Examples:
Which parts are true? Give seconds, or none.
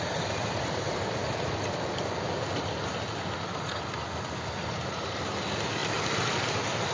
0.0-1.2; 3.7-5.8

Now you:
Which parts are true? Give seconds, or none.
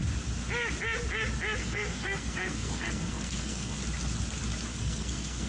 0.0-1.6; 3.8-4.7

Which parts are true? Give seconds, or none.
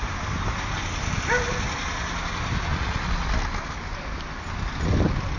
0.0-2.7; 3.3-5.4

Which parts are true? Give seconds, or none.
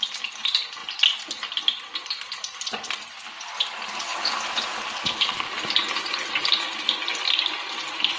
0.0-8.2